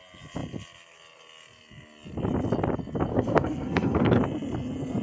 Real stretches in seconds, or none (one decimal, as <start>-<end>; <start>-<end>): 0.0-3.1; 4.2-5.0

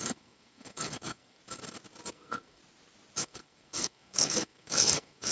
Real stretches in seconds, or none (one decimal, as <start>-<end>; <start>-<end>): 1.4-2.1; 2.6-3.2

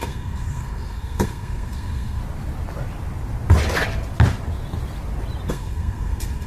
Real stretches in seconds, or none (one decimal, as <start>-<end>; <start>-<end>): 2.2-5.5

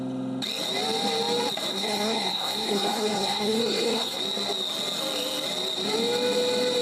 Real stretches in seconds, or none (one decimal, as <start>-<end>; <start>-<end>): 0.0-1.7; 4.2-6.8